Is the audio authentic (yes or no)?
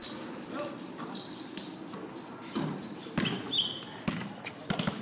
yes